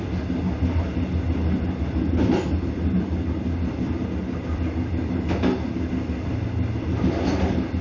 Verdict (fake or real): real